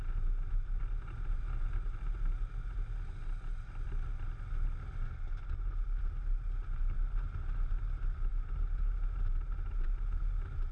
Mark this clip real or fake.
real